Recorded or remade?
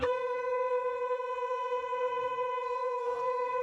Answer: remade